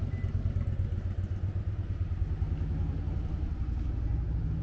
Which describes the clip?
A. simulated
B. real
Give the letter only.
B